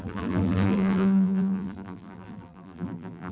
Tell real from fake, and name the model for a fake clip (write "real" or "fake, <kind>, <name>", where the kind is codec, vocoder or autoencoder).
fake, vocoder, BigVGAN v2